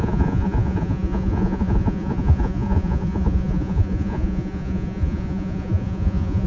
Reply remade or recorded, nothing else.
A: remade